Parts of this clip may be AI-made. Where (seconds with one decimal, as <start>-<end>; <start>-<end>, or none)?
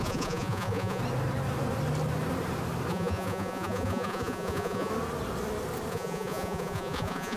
0.0-1.0; 2.9-4.9; 5.9-7.4